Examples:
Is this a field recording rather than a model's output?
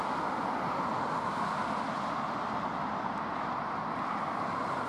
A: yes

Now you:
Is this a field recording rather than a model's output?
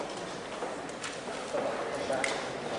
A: yes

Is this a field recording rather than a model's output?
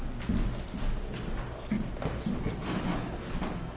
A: yes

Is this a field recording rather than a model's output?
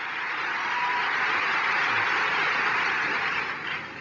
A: no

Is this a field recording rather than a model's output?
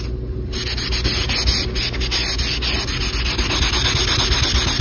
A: yes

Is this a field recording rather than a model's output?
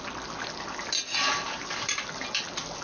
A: yes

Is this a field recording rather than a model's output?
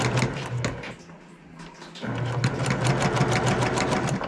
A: yes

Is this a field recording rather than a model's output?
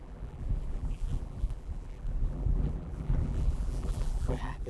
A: no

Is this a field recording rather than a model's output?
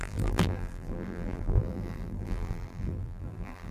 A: no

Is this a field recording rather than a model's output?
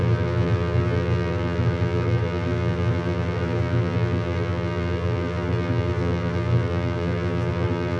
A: no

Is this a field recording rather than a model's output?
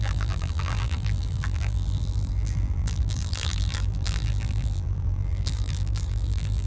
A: no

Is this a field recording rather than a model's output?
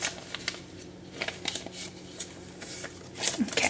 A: yes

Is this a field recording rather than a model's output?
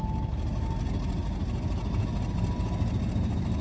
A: yes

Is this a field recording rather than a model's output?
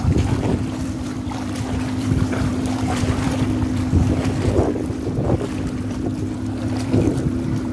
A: no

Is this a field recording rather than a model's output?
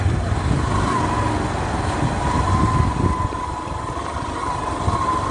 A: yes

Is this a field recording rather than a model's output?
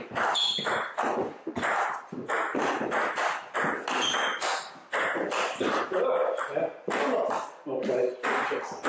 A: yes